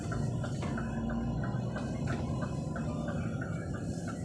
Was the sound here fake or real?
real